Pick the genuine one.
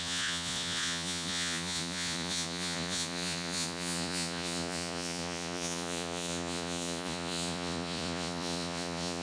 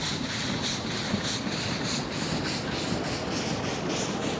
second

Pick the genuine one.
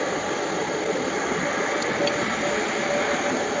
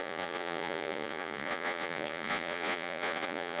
first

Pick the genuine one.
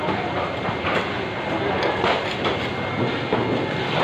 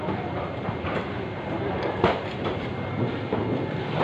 first